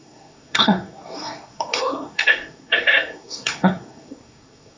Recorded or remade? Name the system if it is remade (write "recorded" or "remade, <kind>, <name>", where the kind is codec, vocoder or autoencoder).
remade, codec, SNAC